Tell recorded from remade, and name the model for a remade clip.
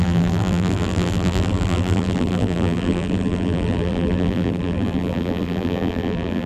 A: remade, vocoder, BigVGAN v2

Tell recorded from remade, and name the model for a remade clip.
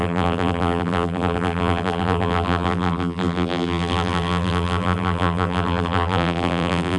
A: remade, vocoder, BigVGAN v2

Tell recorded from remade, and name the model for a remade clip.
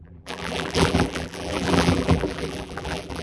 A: remade, vocoder, BigVGAN v2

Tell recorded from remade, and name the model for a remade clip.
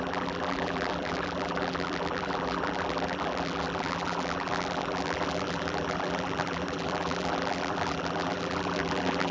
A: remade, vocoder, BigVGAN v2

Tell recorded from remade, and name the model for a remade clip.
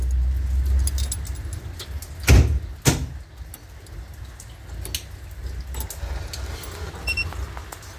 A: recorded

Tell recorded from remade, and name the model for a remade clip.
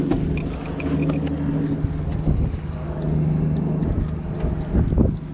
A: recorded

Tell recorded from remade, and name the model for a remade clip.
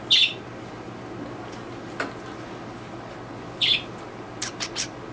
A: recorded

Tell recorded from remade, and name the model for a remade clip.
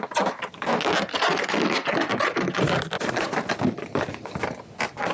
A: recorded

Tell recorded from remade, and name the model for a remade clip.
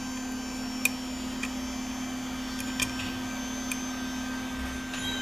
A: recorded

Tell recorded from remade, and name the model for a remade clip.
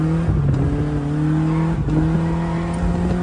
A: recorded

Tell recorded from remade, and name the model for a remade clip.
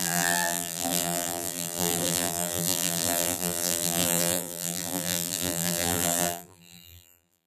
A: remade, vocoder, BigVGAN v2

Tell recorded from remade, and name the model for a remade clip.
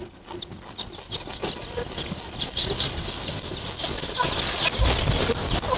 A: recorded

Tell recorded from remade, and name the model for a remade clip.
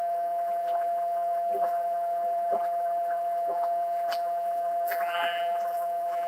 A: remade, vocoder, BigVGAN v2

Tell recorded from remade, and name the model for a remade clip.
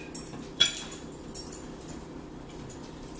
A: remade, vocoder, BigVGAN v2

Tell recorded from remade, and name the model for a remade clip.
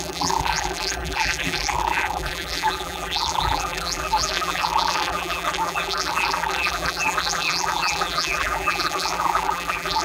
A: remade, vocoder, BigVGAN v2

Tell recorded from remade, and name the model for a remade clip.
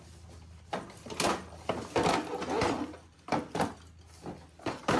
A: recorded